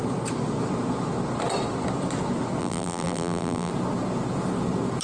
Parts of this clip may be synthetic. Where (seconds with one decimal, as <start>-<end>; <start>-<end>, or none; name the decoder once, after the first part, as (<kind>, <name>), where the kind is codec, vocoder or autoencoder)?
2.6-3.7 (vocoder, BigVGAN v2)